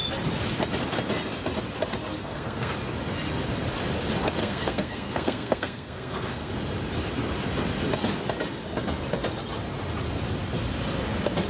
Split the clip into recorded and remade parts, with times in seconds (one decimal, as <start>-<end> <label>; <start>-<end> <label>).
0.0-2.2 recorded; 2.2-2.7 remade; 2.7-4.4 recorded; 4.4-6.5 remade; 6.5-11.5 recorded